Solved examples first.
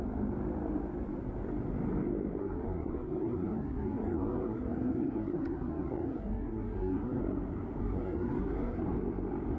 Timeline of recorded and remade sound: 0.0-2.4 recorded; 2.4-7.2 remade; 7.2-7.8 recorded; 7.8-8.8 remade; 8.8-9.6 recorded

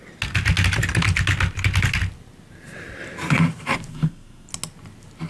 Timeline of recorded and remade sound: 0.0-3.9 recorded; 3.9-4.5 remade; 4.5-5.3 recorded

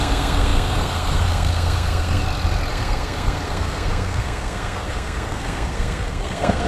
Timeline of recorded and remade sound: 0.0-2.2 remade; 2.2-2.7 recorded; 2.7-6.7 remade

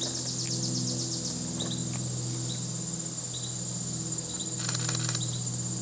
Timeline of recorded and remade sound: 0.0-5.8 recorded